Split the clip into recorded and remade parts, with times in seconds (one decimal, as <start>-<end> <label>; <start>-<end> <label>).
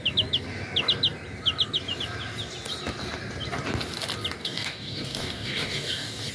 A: 0.0-4.4 recorded; 4.4-6.3 remade